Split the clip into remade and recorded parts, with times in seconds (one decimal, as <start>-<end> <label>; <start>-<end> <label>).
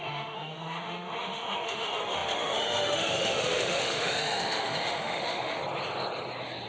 0.0-5.6 remade; 5.6-6.7 recorded